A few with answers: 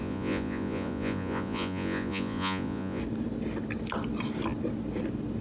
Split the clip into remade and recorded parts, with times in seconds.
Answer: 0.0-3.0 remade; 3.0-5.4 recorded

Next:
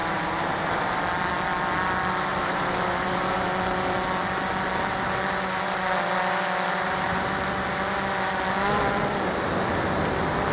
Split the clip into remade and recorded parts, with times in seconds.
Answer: 0.0-1.0 remade; 1.0-2.3 recorded; 2.3-3.5 remade; 3.5-6.7 recorded; 6.7-7.2 remade; 7.2-10.5 recorded

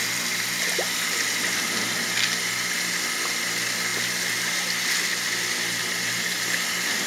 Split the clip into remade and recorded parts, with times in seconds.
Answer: 0.0-7.1 recorded

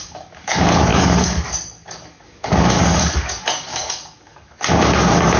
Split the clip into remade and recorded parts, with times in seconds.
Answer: 0.0-5.4 remade

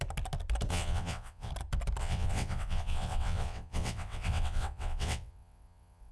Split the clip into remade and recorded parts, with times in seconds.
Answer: 0.0-0.7 recorded; 0.7-1.5 remade; 1.5-2.0 recorded; 2.0-6.1 remade

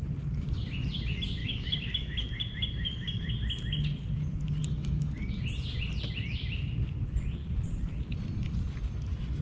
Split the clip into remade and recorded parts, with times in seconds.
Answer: 0.0-1.4 recorded; 1.4-3.3 remade; 3.3-4.6 recorded; 4.6-5.4 remade; 5.4-9.4 recorded

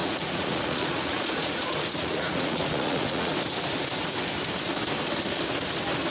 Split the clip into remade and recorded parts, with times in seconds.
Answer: 0.0-3.3 remade; 3.3-6.1 recorded